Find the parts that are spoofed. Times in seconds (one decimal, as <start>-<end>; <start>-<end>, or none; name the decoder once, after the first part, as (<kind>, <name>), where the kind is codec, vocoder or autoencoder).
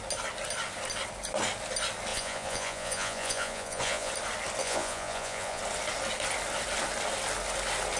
2.1-4.1 (vocoder, Vocos); 4.6-5.6